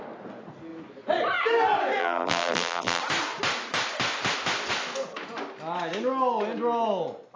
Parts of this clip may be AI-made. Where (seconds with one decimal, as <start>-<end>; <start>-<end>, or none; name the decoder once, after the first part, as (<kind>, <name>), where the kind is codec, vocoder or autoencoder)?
2.0-3.0 (vocoder, BigVGAN v2)